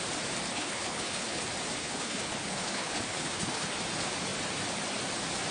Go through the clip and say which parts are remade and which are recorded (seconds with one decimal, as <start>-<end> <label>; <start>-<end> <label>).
0.0-0.5 recorded; 0.5-1.4 remade; 1.4-1.8 recorded; 1.8-3.7 remade; 3.7-5.5 recorded